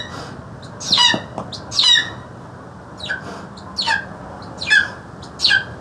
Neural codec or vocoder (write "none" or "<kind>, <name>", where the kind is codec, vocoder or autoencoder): none